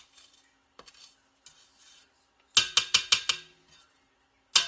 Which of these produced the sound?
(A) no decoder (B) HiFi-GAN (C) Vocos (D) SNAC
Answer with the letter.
A